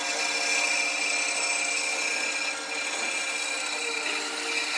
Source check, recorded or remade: recorded